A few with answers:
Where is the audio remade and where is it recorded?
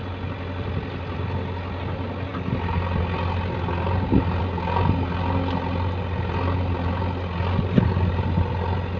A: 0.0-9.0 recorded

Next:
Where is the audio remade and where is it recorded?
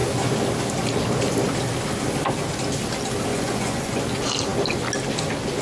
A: 0.0-3.3 recorded; 3.3-4.0 remade; 4.0-5.6 recorded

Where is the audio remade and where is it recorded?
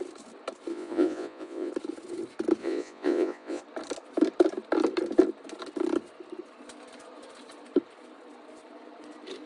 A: 0.0-0.7 recorded; 0.7-1.7 remade; 1.7-2.6 recorded; 2.6-3.6 remade; 3.6-9.5 recorded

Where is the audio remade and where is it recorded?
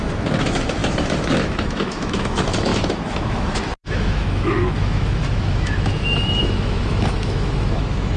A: 0.0-8.2 remade